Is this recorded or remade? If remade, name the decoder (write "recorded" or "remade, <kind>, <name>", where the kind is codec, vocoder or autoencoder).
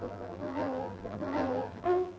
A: remade, vocoder, BigVGAN v2